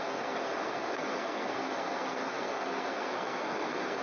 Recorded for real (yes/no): no